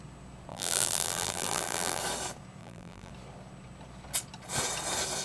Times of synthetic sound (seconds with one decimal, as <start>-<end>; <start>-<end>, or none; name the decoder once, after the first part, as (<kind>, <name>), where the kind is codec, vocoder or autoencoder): 0.5-2.0 (vocoder, BigVGAN v2); 2.6-3.1